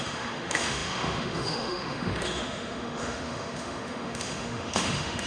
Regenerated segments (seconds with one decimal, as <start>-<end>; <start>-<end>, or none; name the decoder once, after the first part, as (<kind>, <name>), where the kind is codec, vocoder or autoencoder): 0.0-5.3 (autoencoder, DAC-VAE)